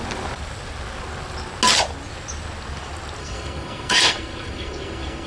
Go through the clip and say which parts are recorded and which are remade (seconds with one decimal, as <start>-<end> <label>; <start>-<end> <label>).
0.0-3.2 recorded; 3.2-5.3 remade